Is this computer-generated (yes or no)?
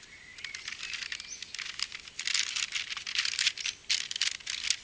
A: no